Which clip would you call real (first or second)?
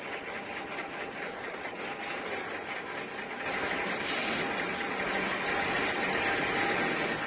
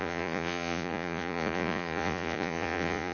first